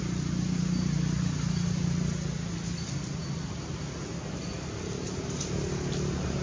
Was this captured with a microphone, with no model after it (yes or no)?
yes